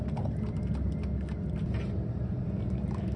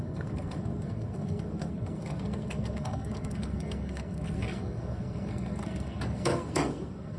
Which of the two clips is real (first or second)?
first